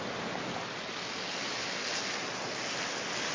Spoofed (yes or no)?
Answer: no